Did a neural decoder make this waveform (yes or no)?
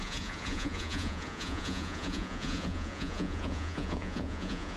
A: yes